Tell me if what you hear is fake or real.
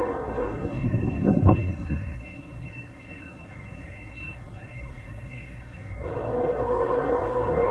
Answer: fake